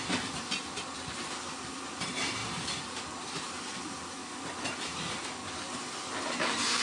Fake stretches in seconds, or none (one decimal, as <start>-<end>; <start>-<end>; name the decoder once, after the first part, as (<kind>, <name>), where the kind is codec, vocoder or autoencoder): 0.0-4.2 (vocoder, BigVGAN v2); 4.7-6.8